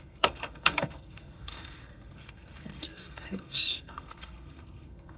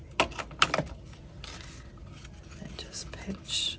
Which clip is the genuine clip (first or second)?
second